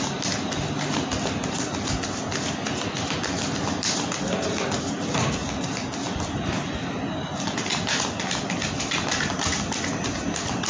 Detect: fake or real real